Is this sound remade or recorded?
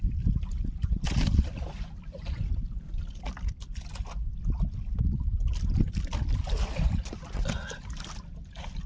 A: recorded